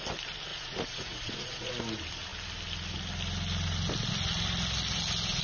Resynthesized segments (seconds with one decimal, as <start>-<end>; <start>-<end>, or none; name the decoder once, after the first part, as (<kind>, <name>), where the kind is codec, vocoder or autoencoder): 0.5-1.7 (vocoder, Vocos)